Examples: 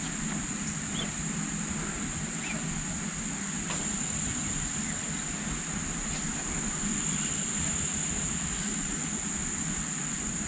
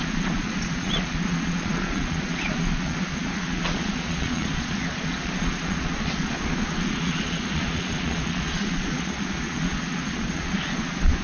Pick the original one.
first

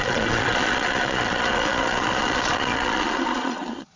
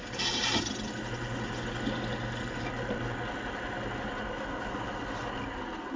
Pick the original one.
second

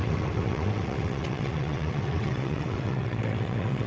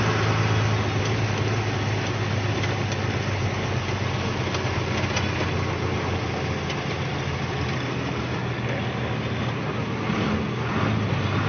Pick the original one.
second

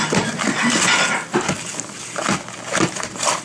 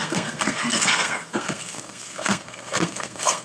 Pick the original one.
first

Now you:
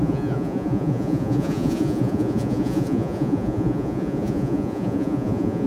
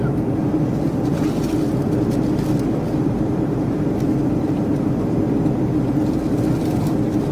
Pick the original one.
second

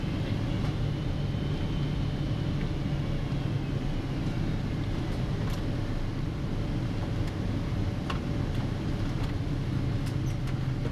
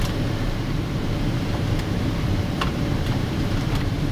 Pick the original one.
first